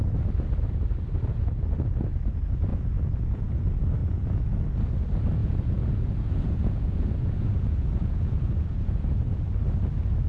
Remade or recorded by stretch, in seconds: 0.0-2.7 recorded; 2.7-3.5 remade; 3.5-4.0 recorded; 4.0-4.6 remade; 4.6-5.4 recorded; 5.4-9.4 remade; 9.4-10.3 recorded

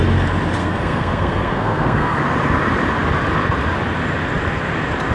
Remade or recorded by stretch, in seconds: 0.0-0.6 recorded; 0.6-2.2 remade; 2.2-5.1 recorded

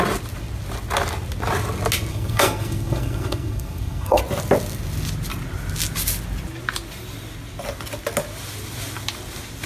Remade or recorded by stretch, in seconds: 0.0-2.1 recorded; 2.1-4.2 remade; 4.2-9.7 recorded

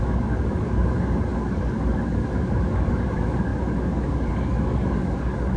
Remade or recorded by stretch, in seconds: 0.0-5.6 remade

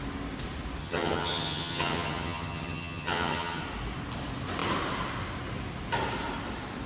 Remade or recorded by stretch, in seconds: 0.0-0.8 recorded; 0.8-3.6 remade; 3.6-6.9 recorded

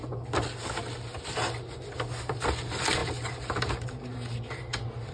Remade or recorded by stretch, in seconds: 0.0-5.1 recorded

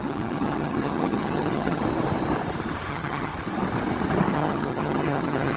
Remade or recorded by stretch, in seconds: 0.0-1.8 remade; 1.8-2.9 recorded; 2.9-3.3 remade; 3.3-4.3 recorded; 4.3-5.6 remade

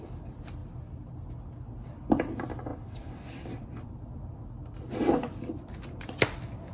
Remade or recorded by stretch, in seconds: 0.0-2.7 recorded; 2.7-3.9 remade; 3.9-6.7 recorded